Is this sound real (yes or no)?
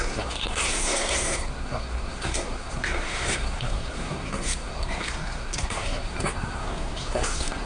no